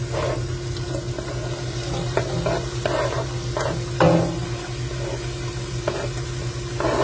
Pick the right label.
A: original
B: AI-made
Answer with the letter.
A